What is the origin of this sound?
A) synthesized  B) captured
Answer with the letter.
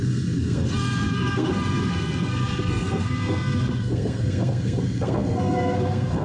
A